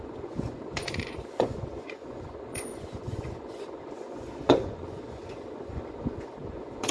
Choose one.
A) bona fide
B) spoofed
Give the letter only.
B